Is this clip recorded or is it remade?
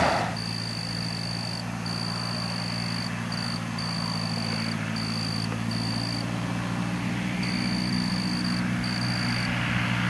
recorded